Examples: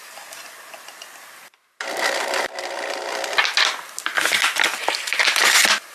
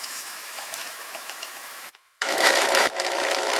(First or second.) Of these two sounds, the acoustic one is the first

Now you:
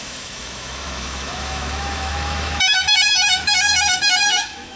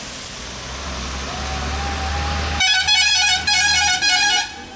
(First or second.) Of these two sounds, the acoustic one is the second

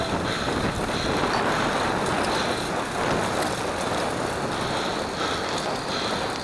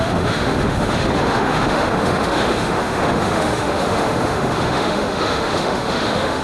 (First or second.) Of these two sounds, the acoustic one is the first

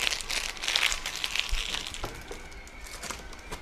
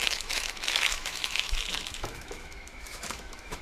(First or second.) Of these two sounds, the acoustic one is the first